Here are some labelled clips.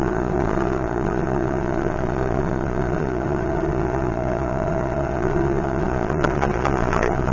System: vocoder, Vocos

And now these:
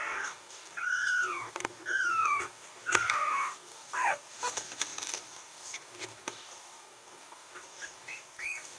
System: codec, DAC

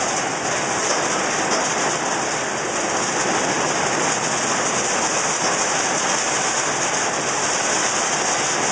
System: none